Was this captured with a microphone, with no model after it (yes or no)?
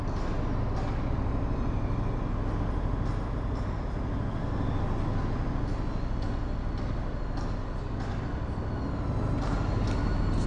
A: yes